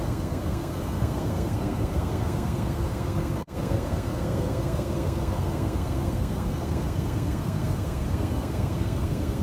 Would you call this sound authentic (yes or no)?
no